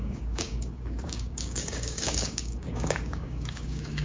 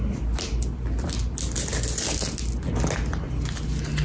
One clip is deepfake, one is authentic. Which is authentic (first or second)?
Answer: second